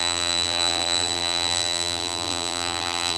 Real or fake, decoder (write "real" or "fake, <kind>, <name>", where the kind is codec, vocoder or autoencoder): fake, vocoder, BigVGAN v2